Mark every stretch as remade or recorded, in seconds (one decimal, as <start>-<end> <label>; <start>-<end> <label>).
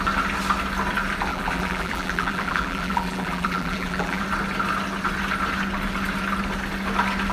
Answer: 0.0-1.3 recorded; 1.3-4.2 remade; 4.2-7.3 recorded